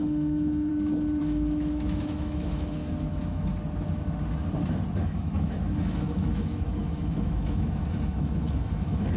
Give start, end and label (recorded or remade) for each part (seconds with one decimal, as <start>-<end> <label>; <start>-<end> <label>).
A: 0.0-0.7 remade; 0.7-1.2 recorded; 1.2-3.5 remade; 3.5-5.0 recorded; 5.0-9.2 remade